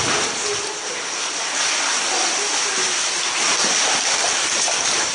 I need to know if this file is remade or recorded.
recorded